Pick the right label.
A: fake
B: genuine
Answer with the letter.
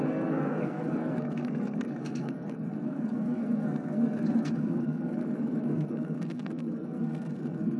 A